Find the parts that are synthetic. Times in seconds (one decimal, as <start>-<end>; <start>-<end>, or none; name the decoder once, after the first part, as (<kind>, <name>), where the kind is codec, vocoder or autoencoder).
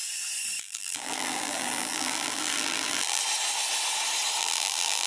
0.6-3.2 (vocoder, BigVGAN v2); 4.4-5.1